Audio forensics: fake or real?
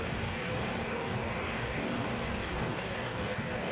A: fake